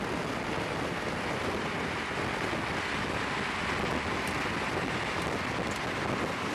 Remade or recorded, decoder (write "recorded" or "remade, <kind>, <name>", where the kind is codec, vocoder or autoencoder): recorded